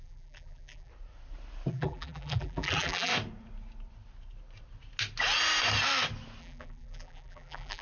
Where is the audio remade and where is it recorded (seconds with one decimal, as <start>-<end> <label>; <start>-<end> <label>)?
0.0-0.9 remade; 0.9-1.7 recorded; 1.7-3.1 remade; 3.1-6.4 recorded; 6.4-7.8 remade